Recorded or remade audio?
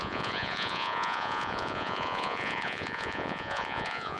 remade